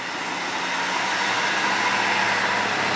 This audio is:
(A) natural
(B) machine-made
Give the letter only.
A